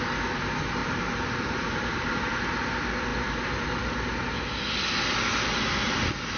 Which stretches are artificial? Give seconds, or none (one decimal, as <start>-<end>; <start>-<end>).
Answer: 0.8-2.2